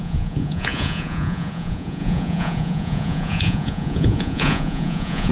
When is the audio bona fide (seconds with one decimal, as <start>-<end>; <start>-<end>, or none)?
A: none